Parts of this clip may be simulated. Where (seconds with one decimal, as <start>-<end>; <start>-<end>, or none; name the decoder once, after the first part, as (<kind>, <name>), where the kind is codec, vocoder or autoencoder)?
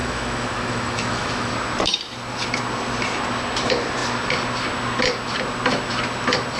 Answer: 0.0-1.5 (autoencoder, DAC-VAE)